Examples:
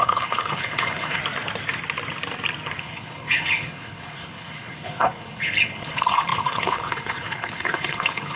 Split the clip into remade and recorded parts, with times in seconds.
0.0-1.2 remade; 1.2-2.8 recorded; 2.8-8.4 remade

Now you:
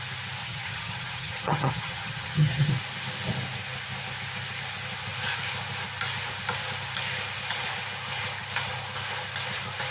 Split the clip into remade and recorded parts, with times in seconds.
0.0-0.4 recorded; 0.4-2.7 remade; 2.7-9.9 recorded

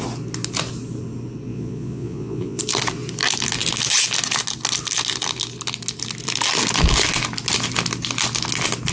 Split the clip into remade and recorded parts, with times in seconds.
0.0-1.5 recorded; 1.5-2.6 remade; 2.6-8.9 recorded